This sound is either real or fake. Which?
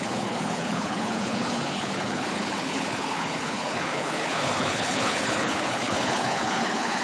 fake